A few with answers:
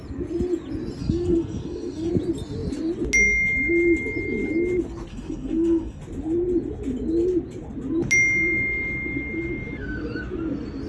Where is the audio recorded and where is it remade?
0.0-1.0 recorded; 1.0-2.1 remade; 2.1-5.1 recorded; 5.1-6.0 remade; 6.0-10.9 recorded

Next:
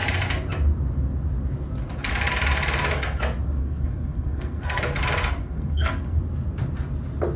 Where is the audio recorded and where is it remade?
0.0-3.6 recorded; 3.6-4.8 remade; 4.8-5.4 recorded; 5.4-6.2 remade; 6.2-7.4 recorded

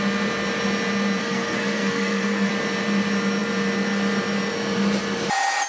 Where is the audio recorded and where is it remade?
0.0-1.2 recorded; 1.2-2.5 remade; 2.5-5.7 recorded

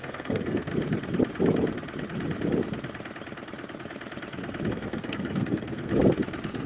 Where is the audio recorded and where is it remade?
0.0-0.7 remade; 0.7-4.7 recorded; 4.7-5.9 remade; 5.9-6.7 recorded

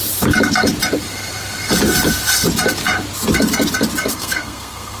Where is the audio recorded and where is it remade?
0.0-4.1 recorded; 4.1-5.0 remade

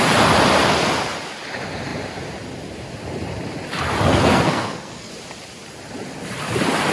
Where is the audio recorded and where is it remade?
0.0-4.1 recorded; 4.1-5.1 remade; 5.1-6.9 recorded